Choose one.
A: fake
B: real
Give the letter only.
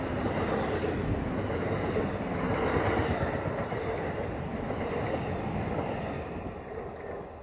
B